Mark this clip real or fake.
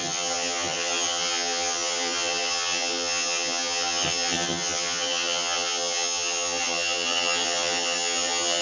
fake